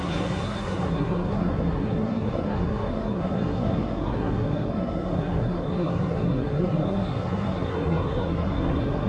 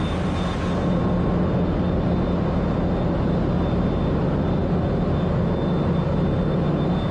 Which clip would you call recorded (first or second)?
second